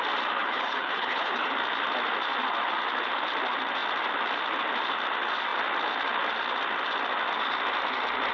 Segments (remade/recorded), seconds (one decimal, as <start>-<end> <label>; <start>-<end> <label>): 0.0-0.4 recorded; 0.4-1.5 remade; 1.5-8.3 recorded